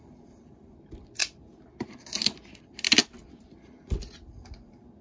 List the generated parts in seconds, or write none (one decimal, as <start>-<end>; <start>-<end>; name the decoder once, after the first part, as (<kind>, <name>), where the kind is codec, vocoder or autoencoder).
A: none